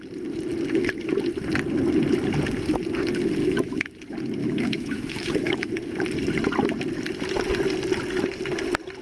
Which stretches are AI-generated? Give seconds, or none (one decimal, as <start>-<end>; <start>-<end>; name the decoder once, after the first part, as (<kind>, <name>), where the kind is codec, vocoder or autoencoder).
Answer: 3.4-4.0 (autoencoder, DAC-VAE); 4.4-5.7

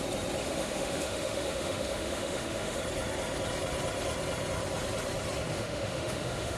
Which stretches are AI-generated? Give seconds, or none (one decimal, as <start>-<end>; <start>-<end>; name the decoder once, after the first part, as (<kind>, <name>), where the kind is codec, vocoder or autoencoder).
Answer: 0.4-2.8 (autoencoder, DAC-VAE); 5.5-6.6

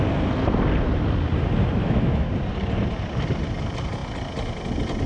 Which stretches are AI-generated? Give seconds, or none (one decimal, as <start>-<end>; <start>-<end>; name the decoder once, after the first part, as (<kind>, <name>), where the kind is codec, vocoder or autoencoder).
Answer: 1.8-2.3 (autoencoder, DAC-VAE)

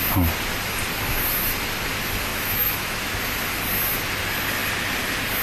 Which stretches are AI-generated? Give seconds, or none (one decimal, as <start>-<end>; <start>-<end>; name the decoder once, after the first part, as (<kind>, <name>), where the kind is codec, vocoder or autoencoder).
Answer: 2.3-3.2 (autoencoder, DAC-VAE)

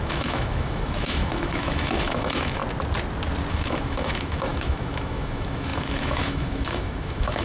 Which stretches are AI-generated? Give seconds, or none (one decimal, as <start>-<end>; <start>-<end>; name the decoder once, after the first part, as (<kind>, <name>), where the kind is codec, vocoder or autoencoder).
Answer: 0.0-2.6 (autoencoder, DAC-VAE); 3.5-7.4

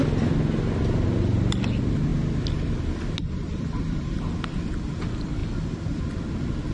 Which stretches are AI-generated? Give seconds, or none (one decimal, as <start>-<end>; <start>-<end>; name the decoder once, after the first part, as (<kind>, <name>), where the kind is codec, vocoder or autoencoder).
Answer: none

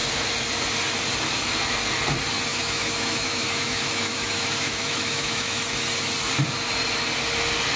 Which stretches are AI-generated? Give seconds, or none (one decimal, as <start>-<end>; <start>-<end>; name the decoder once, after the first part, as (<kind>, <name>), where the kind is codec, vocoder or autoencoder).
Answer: 2.5-5.6 (autoencoder, DAC-VAE)